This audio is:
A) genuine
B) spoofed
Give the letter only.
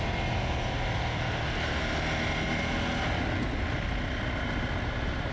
A